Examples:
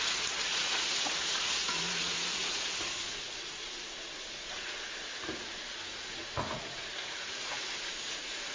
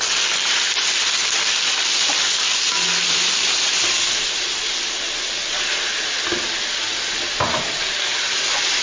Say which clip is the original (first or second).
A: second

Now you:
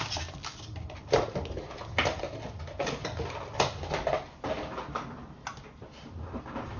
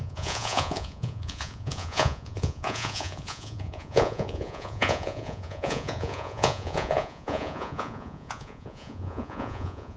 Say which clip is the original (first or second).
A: first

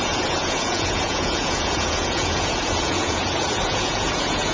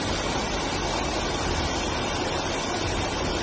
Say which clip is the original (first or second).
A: second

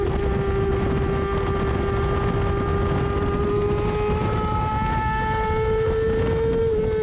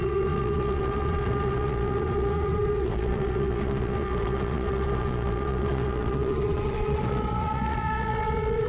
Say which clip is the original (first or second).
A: first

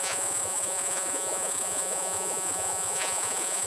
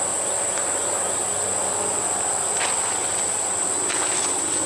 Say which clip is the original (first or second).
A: second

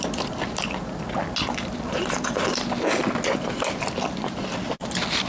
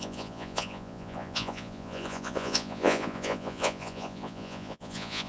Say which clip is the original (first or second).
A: first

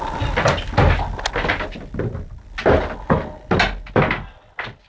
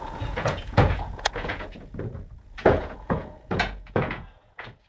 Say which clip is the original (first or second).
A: first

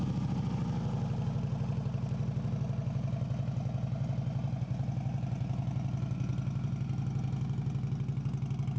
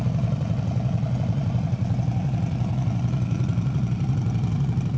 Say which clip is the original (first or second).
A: first